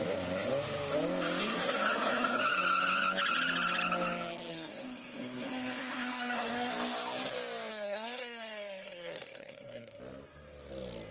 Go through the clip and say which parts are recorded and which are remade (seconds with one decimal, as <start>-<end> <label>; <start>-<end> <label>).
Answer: 0.0-1.4 recorded; 1.4-2.4 remade; 2.4-4.5 recorded; 4.5-6.7 remade; 6.7-7.7 recorded; 7.7-10.0 remade; 10.0-11.1 recorded

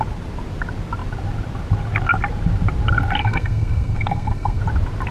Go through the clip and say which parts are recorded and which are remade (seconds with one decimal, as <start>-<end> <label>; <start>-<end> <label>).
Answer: 0.0-3.2 recorded; 3.2-4.6 remade; 4.6-5.1 recorded

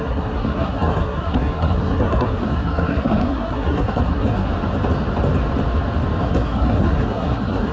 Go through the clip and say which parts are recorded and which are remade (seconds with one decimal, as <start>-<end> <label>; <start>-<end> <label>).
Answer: 0.0-4.5 remade; 4.5-6.2 recorded; 6.2-7.7 remade

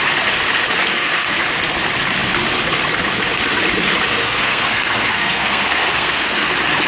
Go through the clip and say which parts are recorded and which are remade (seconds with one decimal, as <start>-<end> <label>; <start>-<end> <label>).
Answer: 0.0-0.9 recorded; 0.9-1.4 remade; 1.4-4.2 recorded; 4.2-6.5 remade; 6.5-6.9 recorded

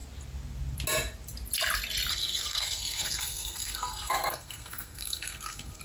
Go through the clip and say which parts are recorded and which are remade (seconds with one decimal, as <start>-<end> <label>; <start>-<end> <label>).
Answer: 0.0-2.1 recorded; 2.1-5.8 remade

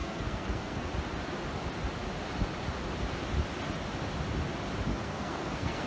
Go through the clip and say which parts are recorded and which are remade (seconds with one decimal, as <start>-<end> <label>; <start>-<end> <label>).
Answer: 0.0-0.9 remade; 0.9-4.9 recorded; 4.9-5.9 remade

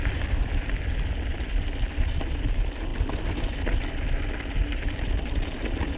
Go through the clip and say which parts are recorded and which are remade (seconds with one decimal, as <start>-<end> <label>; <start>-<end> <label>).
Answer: 0.0-6.0 recorded

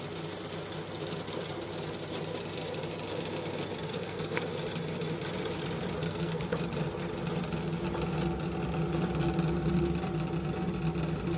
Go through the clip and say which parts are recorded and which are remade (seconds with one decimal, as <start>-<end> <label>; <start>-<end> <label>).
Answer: 0.0-3.9 recorded; 3.9-4.5 remade; 4.5-6.0 recorded; 6.0-6.6 remade; 6.6-11.4 recorded